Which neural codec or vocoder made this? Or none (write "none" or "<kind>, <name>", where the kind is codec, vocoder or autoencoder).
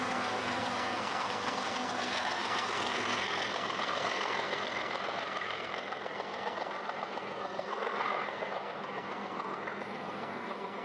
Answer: codec, SNAC